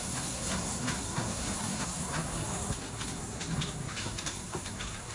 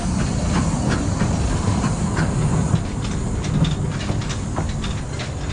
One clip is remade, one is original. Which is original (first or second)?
second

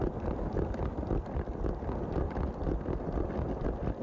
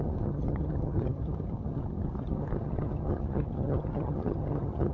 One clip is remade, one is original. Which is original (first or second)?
first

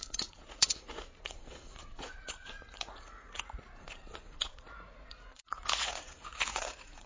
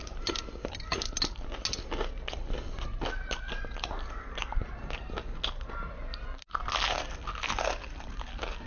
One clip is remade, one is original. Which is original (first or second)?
second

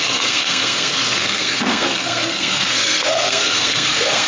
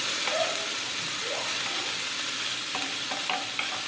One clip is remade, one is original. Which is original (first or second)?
second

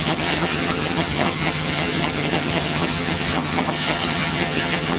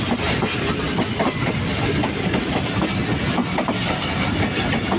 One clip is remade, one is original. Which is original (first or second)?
second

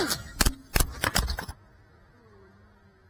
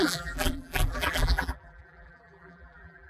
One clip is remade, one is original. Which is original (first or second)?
first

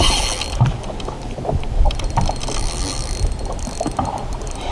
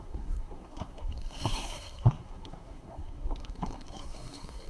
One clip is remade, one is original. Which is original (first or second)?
first